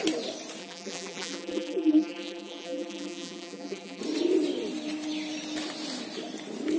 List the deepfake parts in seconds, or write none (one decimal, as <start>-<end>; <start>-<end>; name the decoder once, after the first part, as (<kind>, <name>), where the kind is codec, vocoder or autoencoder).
0.6-4.0 (vocoder, BigVGAN v2)

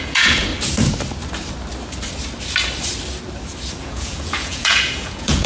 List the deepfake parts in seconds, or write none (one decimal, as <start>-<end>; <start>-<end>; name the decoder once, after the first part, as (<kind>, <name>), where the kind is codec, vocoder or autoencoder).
0.0-0.5 (vocoder, Vocos); 3.8-5.5